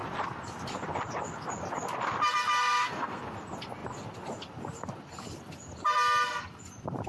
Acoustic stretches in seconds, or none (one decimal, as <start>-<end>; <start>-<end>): 0.0-2.6; 3.2-7.1